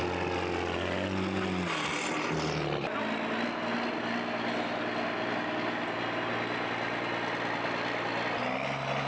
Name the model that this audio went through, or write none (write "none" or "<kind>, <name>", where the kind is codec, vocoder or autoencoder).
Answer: none